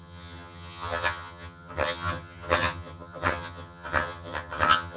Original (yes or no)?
no